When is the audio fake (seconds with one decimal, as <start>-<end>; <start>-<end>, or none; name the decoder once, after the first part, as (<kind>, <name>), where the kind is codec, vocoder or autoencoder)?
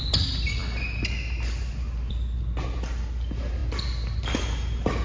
none